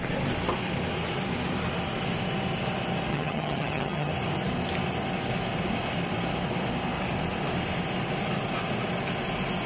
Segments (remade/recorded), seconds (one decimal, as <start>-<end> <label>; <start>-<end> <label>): 0.0-3.1 recorded; 3.1-4.1 remade; 4.1-9.7 recorded